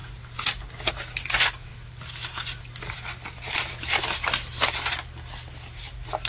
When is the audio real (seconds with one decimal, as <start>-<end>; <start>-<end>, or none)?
0.0-6.3